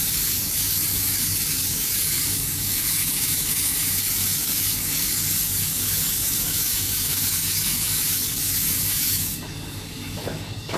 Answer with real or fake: fake